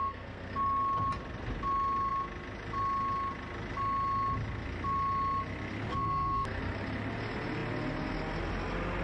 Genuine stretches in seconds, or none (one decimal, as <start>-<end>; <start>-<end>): 0.5-5.9; 6.6-9.0